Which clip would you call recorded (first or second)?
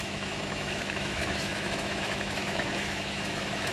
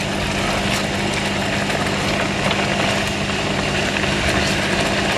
second